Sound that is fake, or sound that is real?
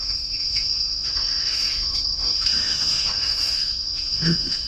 fake